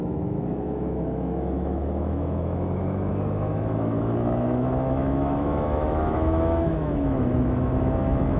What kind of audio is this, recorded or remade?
remade